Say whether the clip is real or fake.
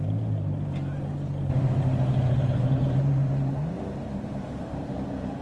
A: fake